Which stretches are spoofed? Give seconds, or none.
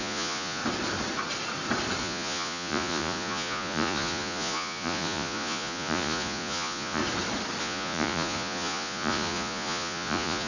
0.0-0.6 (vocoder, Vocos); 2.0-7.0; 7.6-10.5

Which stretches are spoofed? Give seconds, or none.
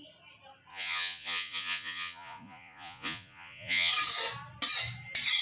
0.7-3.9 (vocoder, Vocos)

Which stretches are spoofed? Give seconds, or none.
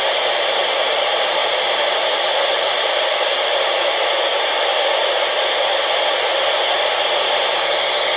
none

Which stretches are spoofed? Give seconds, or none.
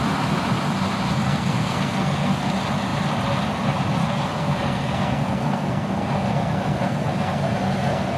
1.2-2.5 (codec, SNAC); 4.0-8.2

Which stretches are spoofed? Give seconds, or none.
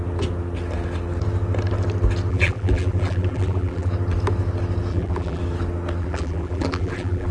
2.3-3.9 (vocoder, BigVGAN v2); 4.9-5.4; 6.0-7.3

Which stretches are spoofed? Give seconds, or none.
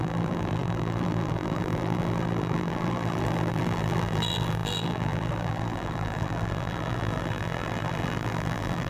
0.0-8.9 (vocoder, BigVGAN v2)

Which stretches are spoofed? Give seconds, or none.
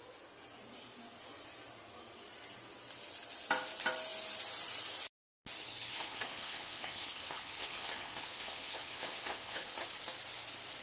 5.6-9.7 (codec, HILCodec)